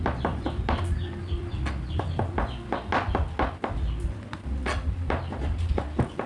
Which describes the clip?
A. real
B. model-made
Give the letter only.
A